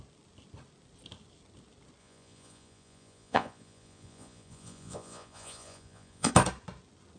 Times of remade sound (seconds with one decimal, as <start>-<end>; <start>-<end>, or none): 2.0-6.3